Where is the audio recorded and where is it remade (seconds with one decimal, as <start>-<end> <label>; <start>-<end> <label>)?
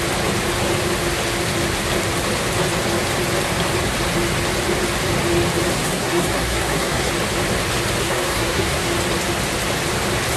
0.0-5.7 recorded; 5.7-7.1 remade; 7.1-8.0 recorded; 8.0-8.9 remade; 8.9-10.4 recorded